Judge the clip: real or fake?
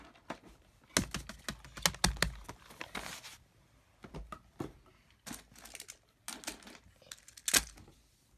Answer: real